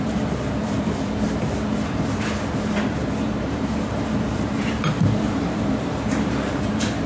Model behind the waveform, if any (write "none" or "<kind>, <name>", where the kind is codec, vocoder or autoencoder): vocoder, BigVGAN v2